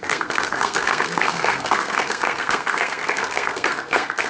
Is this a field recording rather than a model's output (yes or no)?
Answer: no